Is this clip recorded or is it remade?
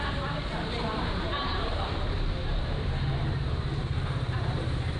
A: remade